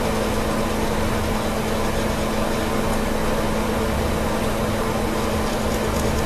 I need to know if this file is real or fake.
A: real